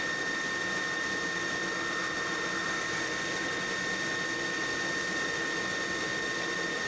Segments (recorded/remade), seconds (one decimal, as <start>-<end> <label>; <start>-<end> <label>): 0.0-2.6 recorded; 2.6-3.4 remade; 3.4-6.9 recorded